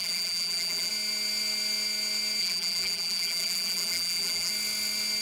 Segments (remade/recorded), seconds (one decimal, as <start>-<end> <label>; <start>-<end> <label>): 0.0-0.9 remade; 0.9-2.4 recorded; 2.4-4.5 remade; 4.5-5.2 recorded